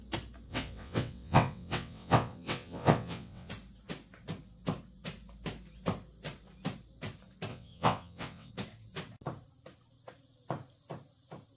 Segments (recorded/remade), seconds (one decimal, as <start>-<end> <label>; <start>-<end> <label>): 0.0-0.5 recorded; 0.5-3.5 remade; 3.5-7.5 recorded; 7.5-8.5 remade; 8.5-11.6 recorded